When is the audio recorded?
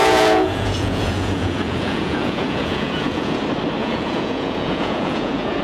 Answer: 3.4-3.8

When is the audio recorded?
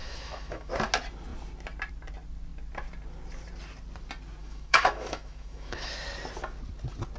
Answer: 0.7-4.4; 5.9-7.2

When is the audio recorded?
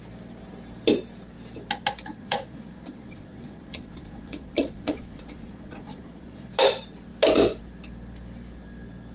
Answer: 0.0-2.1; 6.5-9.1